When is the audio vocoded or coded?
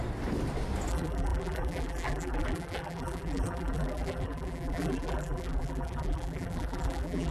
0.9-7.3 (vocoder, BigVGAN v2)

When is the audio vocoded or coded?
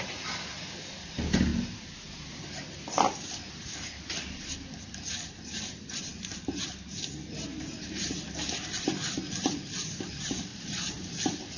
10.5-11.0 (vocoder, Vocos)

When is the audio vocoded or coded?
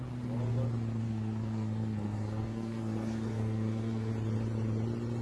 1.0-4.1 (codec, SNAC)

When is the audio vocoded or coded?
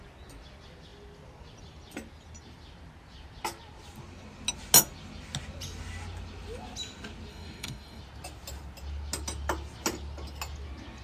7.3-8.0 (codec, DAC)